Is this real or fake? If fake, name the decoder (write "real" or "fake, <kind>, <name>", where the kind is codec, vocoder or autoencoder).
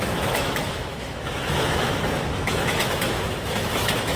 fake, autoencoder, DAC-VAE